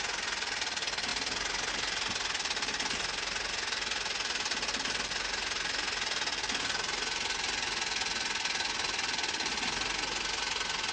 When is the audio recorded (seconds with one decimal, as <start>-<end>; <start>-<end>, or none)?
0.0-10.9